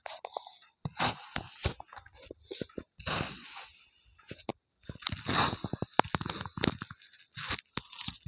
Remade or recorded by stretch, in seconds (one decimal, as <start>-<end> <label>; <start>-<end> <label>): 0.0-8.3 recorded